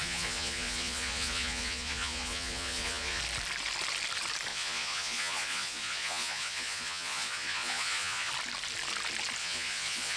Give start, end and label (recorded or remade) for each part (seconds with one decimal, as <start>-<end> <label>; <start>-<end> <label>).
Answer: 0.0-3.2 remade; 3.2-4.5 recorded; 4.5-8.3 remade; 8.3-9.4 recorded; 9.4-10.2 remade